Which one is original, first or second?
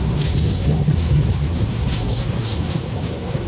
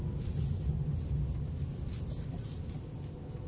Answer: second